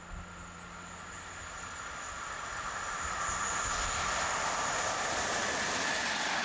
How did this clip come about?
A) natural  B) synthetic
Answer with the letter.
A